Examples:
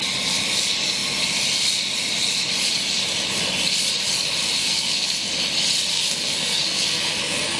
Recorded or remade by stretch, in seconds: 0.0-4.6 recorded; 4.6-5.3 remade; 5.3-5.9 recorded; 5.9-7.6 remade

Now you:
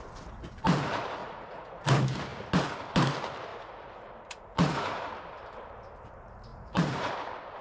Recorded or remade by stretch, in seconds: 0.0-1.2 recorded; 1.2-1.8 remade; 1.8-3.5 recorded; 3.5-5.1 remade; 5.1-6.5 recorded; 6.5-7.1 remade; 7.1-7.6 recorded

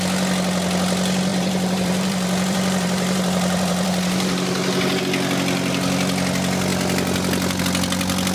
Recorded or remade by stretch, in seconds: 0.0-1.3 recorded; 1.3-5.0 remade; 5.0-8.3 recorded

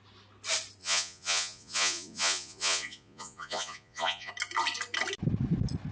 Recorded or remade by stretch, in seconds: 0.0-0.8 recorded; 0.8-4.3 remade; 4.3-5.9 recorded